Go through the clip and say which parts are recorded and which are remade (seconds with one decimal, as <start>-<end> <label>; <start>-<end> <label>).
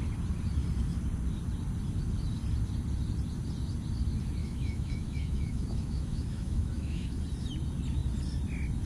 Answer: 0.0-4.4 recorded; 4.4-7.2 remade; 7.2-8.8 recorded